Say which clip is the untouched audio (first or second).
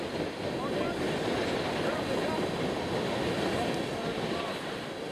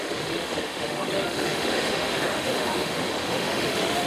first